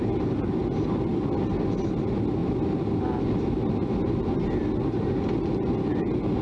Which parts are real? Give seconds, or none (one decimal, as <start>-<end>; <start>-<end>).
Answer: 0.0-6.4